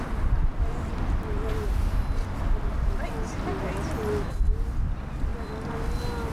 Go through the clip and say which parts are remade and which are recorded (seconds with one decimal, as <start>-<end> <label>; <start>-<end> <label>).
0.0-6.3 recorded